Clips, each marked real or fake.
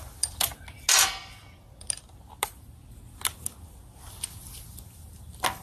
real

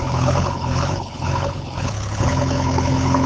fake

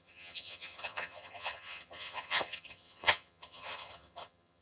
fake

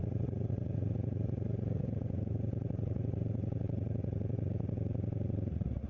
fake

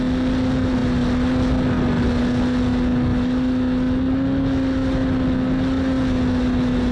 real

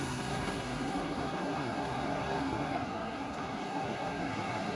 fake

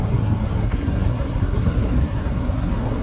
fake